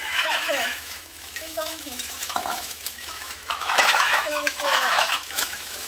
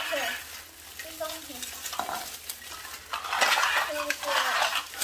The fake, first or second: first